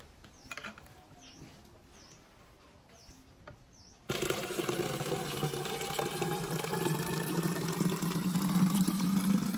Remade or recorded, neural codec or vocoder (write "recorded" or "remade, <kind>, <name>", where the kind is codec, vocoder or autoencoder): recorded